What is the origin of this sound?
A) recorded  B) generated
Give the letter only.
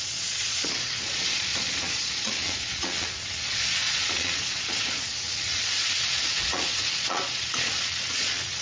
B